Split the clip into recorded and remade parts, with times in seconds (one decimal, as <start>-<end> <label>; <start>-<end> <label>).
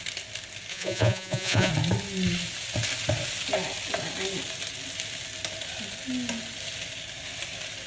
0.0-0.7 recorded; 0.7-1.7 remade; 1.7-7.9 recorded